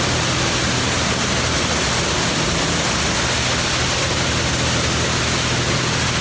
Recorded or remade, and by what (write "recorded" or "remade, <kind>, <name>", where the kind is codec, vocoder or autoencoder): recorded